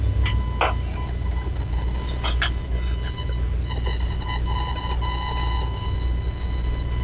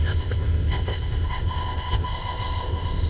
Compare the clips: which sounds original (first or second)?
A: first